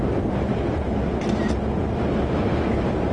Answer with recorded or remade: recorded